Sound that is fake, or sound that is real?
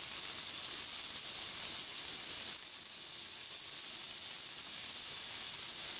real